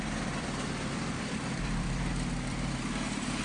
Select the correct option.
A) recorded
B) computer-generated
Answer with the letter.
B